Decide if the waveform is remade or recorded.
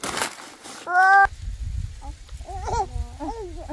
recorded